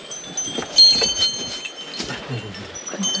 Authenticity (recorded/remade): recorded